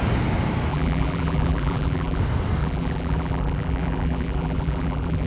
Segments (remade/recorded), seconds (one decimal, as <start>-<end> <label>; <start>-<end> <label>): 0.0-0.7 recorded; 0.7-2.2 remade; 2.2-2.6 recorded; 2.6-5.3 remade